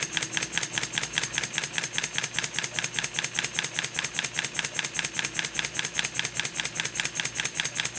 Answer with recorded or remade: recorded